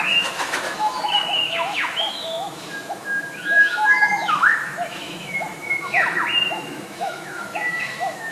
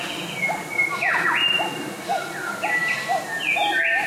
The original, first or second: second